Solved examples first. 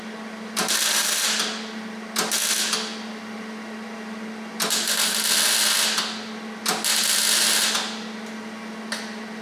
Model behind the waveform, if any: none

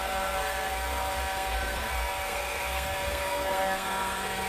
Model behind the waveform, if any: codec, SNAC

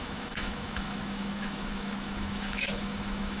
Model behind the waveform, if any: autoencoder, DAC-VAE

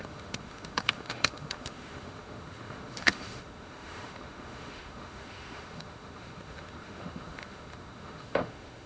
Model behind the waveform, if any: autoencoder, DAC-VAE